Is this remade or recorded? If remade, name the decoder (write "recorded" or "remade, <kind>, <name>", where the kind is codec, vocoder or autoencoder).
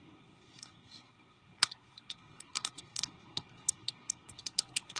remade, codec, SNAC